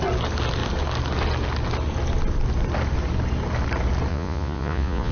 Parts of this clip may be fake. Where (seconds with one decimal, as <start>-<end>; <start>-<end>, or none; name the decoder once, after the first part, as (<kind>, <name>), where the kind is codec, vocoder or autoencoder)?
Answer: 4.1-5.1 (vocoder, Vocos)